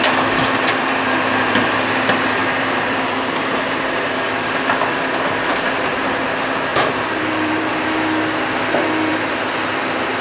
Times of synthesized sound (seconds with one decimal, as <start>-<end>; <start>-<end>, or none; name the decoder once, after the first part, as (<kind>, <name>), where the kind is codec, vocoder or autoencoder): 2.4-5.9 (vocoder, BigVGAN v2); 6.7-7.7